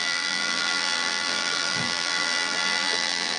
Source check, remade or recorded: remade